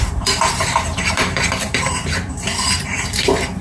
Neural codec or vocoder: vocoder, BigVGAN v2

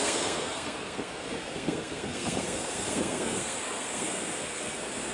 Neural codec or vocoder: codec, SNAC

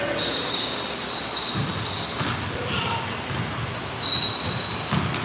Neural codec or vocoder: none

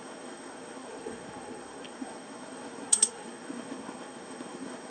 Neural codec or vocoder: codec, SNAC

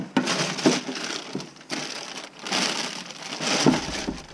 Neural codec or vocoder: none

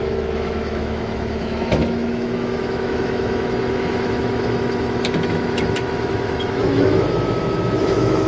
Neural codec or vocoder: autoencoder, DAC-VAE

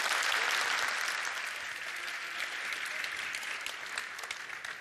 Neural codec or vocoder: none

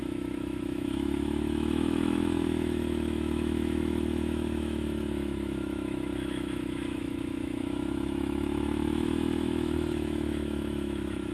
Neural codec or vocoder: autoencoder, DAC-VAE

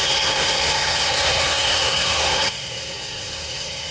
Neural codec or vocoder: codec, SNAC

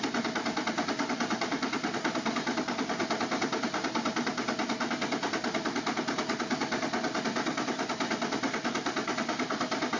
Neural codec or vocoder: none